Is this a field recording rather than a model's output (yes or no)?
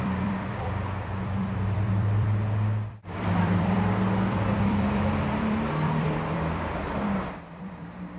no